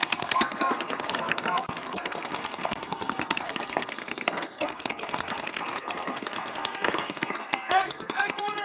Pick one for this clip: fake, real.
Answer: fake